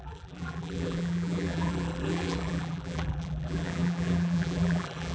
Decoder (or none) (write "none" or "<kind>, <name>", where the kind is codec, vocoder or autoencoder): vocoder, BigVGAN v2